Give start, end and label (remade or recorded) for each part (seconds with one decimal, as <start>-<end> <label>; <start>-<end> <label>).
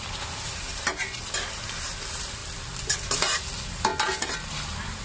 0.0-5.0 recorded